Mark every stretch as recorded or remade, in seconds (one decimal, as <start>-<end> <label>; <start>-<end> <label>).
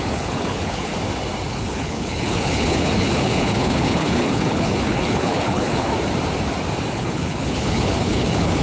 0.0-0.9 remade; 0.9-1.5 recorded; 1.5-5.9 remade; 5.9-6.9 recorded; 6.9-8.6 remade